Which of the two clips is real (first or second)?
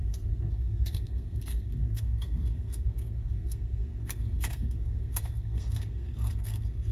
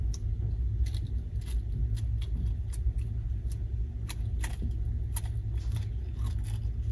second